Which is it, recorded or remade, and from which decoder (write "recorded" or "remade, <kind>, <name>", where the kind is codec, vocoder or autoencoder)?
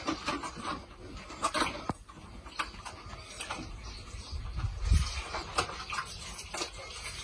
recorded